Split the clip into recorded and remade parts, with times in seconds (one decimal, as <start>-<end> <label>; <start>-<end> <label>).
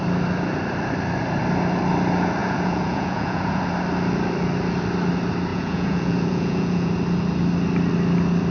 0.0-2.4 recorded; 2.4-3.6 remade; 3.6-5.5 recorded; 5.5-6.9 remade; 6.9-8.5 recorded